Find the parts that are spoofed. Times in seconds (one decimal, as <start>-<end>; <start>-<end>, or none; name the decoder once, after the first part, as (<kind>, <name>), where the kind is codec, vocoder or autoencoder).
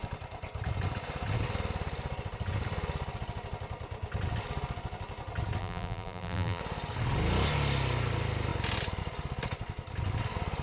5.6-6.6 (vocoder, BigVGAN v2)